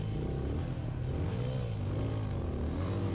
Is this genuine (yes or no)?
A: yes